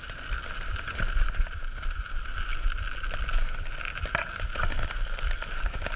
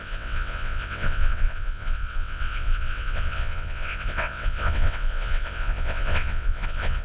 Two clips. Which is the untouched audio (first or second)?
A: first